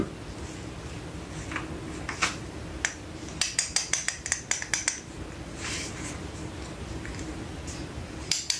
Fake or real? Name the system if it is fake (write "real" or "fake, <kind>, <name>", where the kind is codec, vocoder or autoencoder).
real